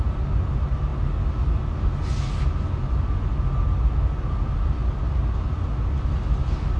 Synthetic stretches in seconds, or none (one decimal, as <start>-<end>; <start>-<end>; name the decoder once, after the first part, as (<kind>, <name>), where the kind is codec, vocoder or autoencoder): none